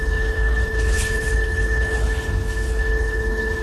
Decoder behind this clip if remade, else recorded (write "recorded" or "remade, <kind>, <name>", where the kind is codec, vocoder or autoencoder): remade, codec, HILCodec